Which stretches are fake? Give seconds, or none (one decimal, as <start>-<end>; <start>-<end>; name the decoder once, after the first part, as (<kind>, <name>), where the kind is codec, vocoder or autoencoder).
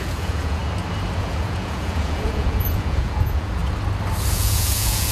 0.0-0.6 (vocoder, Vocos); 1.2-3.6; 4.3-5.1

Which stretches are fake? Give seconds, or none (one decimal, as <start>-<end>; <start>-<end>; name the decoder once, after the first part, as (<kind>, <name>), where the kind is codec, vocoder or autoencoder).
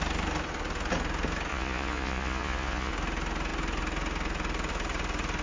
1.5-2.9 (vocoder, Vocos)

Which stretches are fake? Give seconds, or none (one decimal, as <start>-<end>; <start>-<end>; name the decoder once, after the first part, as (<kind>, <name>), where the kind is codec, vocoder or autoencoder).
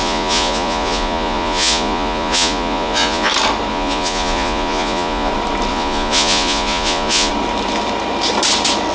0.0-3.3 (vocoder, Vocos); 3.7-5.3; 5.7-7.3